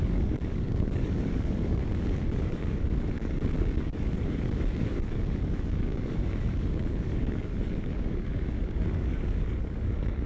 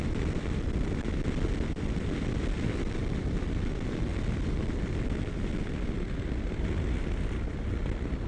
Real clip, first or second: second